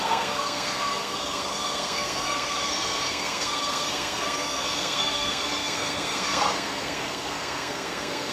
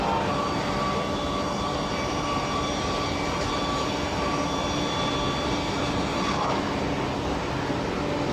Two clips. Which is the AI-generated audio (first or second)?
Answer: first